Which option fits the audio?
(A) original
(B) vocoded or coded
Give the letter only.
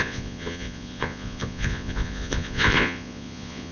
B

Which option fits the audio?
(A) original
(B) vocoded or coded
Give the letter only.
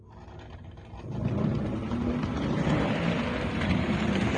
B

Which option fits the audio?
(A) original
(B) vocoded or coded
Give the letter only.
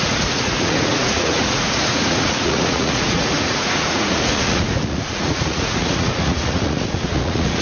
B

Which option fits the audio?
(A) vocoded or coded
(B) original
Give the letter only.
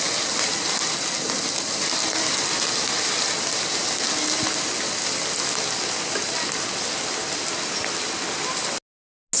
B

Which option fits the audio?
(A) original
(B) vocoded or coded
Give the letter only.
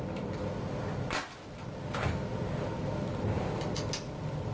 A